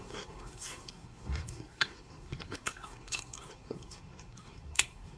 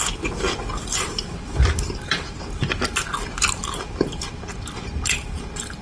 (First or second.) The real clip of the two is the second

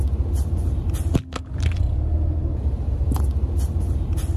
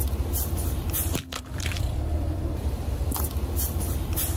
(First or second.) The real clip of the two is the first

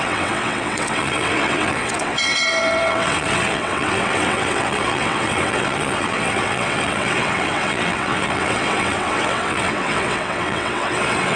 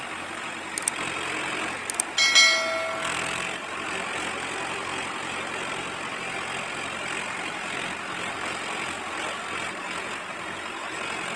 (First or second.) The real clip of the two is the second